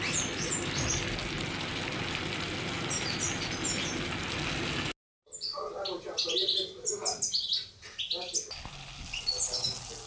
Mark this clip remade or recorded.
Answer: recorded